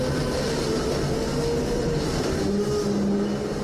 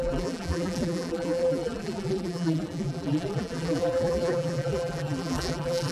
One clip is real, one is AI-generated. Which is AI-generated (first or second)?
second